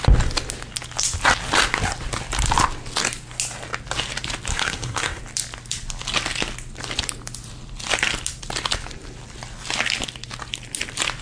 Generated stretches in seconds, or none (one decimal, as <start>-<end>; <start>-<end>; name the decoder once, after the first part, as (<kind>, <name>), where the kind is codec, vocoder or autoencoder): 4.5-5.2 (codec, SNAC)

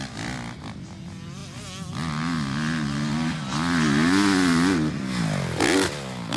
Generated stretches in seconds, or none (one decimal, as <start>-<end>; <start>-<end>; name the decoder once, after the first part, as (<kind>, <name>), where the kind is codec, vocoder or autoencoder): none

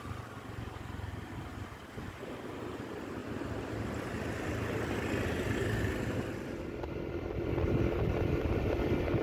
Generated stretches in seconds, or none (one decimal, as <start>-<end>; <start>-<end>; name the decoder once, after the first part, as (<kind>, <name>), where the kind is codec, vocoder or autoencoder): none

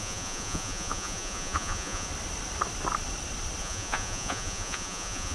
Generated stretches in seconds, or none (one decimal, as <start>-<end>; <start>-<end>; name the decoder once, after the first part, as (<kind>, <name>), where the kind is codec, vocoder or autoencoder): 0.0-2.1 (vocoder, Vocos); 3.6-5.3

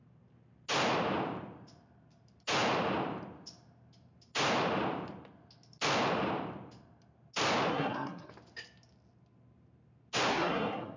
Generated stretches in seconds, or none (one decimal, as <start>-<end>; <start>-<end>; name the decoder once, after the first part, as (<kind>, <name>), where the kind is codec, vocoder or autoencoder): 7.7-8.3 (codec, SNAC); 10.3-11.0

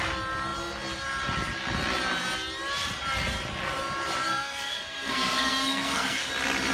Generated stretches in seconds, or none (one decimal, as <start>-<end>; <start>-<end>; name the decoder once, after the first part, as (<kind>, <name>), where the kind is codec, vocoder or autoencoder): 4.2-6.3 (codec, SNAC)

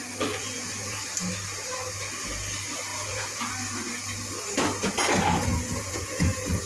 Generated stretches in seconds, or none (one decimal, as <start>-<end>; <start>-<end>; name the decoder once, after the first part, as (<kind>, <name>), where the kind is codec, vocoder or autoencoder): 0.4-1.0 (vocoder, Vocos); 2.9-3.5; 5.5-6.1